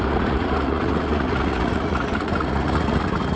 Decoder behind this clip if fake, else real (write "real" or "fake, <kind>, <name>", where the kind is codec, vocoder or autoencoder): fake, vocoder, Vocos